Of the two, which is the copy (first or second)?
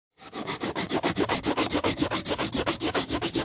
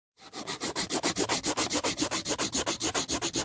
first